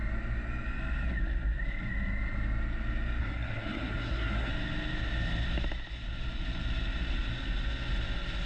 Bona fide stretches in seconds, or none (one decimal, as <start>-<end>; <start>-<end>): 0.0-3.2; 4.5-8.5